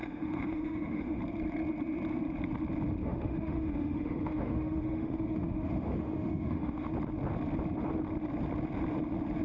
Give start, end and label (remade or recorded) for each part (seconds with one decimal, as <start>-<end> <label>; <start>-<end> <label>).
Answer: 0.0-1.2 remade; 1.2-3.0 recorded; 3.0-6.9 remade; 6.9-9.4 recorded